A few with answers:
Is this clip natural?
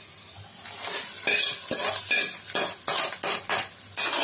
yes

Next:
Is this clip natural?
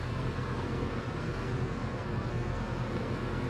no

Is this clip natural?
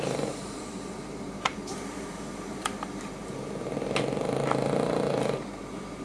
no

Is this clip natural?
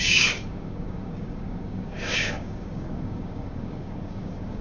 no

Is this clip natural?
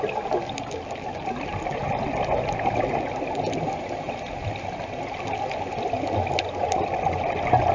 yes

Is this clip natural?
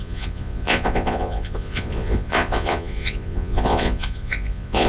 no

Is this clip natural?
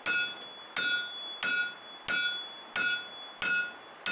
yes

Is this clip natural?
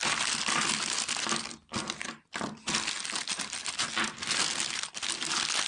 yes